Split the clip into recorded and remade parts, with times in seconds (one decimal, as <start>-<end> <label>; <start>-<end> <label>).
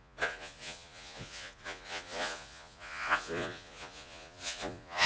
0.0-5.1 remade